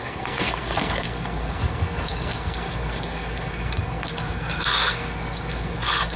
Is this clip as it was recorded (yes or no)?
no